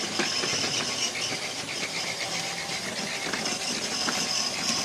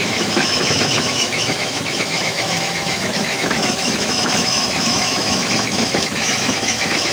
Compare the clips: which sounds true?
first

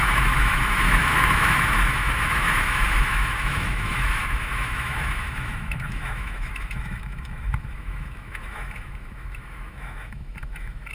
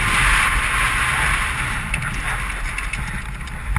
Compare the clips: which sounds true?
second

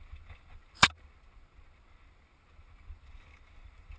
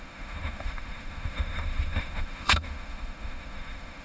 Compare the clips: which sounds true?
first